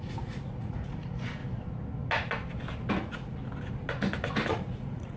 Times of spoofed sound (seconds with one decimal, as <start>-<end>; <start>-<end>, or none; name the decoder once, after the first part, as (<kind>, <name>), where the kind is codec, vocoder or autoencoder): 0.0-1.4 (vocoder, Vocos); 3.0-3.4; 4.5-5.2

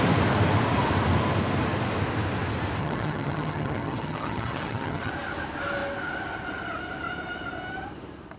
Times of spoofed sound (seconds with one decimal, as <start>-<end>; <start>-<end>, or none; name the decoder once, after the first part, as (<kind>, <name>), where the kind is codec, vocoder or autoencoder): 2.8-5.1 (vocoder, HiFi-GAN)

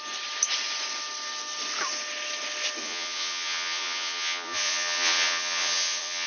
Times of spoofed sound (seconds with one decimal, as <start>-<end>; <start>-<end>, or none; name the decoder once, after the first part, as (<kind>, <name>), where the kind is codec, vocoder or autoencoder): 2.8-6.3 (vocoder, Vocos)

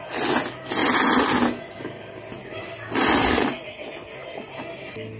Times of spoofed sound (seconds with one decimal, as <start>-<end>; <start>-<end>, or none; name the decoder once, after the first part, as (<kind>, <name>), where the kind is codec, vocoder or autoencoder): none

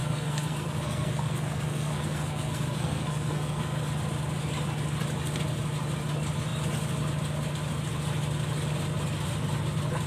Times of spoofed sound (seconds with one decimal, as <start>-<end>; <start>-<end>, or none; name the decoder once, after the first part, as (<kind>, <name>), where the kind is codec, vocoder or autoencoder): 0.0-3.8 (codec, SNAC)

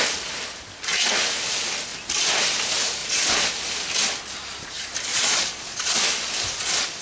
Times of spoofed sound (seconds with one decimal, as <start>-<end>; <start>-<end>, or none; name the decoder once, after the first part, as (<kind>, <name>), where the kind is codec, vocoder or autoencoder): 3.0-3.5 (vocoder, Vocos); 5.1-5.9